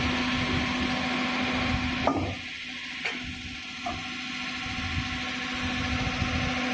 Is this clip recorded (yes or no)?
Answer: yes